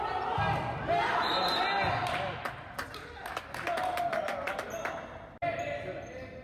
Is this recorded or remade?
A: recorded